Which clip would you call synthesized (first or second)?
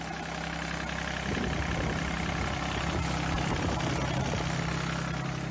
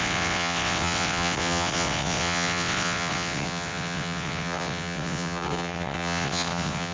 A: second